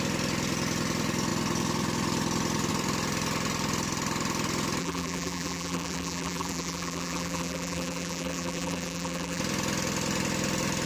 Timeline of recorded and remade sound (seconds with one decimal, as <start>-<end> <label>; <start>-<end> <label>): 0.0-4.8 recorded; 4.8-9.4 remade; 9.4-10.9 recorded

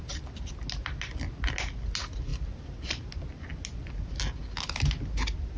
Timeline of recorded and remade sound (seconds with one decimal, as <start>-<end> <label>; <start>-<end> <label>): 0.0-5.6 recorded

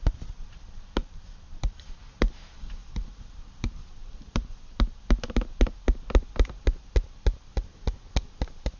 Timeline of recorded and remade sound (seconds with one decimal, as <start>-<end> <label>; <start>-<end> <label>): 0.0-1.0 recorded; 1.0-2.0 remade; 2.0-2.8 recorded; 2.8-5.0 remade; 5.0-8.8 recorded

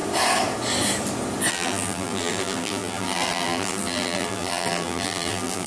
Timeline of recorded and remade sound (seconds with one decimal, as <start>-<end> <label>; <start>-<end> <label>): 0.0-1.5 recorded; 1.5-5.7 remade

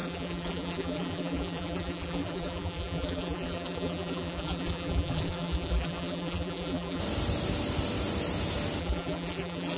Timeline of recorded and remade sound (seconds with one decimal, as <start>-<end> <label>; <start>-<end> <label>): 0.0-7.0 remade; 7.0-8.8 recorded; 8.8-9.8 remade

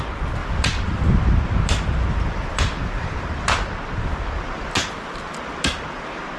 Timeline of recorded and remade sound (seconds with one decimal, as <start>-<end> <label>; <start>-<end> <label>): 0.0-6.4 recorded

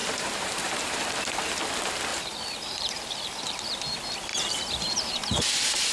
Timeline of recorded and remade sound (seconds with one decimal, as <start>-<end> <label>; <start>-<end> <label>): 0.0-1.0 remade; 1.0-2.1 recorded; 2.1-3.1 remade; 3.1-4.3 recorded; 4.3-5.9 remade

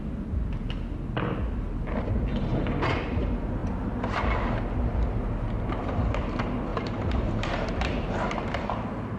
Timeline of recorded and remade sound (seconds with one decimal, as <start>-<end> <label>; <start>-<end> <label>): 0.0-6.7 recorded; 6.7-8.1 remade; 8.1-9.2 recorded